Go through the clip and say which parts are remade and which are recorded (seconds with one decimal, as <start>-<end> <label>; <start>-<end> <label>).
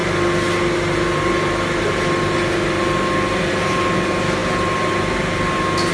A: 0.0-5.9 recorded